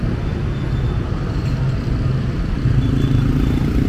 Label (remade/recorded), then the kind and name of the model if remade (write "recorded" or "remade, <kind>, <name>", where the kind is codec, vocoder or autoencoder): recorded